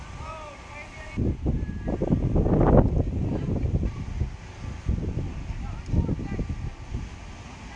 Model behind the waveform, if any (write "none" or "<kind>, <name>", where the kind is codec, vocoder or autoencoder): none